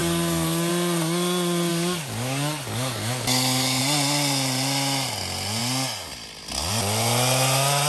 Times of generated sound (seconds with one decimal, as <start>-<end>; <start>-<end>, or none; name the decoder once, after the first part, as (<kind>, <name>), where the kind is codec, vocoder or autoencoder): 0.0-0.7 (codec, DAC); 1.7-3.8